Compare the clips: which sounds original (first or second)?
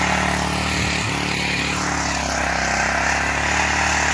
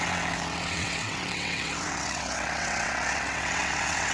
first